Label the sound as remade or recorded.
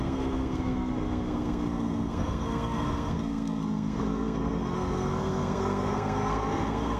remade